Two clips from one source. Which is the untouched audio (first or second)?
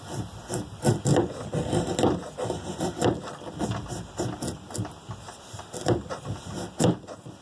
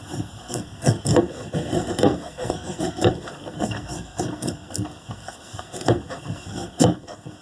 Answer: first